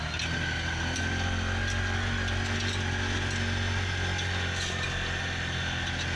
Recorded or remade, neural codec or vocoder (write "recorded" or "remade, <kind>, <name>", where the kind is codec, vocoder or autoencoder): recorded